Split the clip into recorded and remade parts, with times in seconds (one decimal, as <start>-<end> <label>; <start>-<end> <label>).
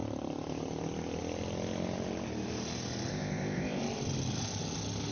0.0-3.1 recorded; 3.1-3.8 remade; 3.8-5.1 recorded